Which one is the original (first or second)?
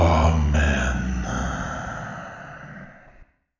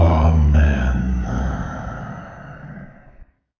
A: first